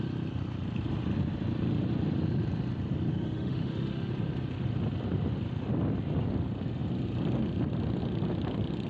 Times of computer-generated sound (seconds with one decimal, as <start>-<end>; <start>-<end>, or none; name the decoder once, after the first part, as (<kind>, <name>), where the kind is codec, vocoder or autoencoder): 3.1-4.1 (autoencoder, DAC-VAE)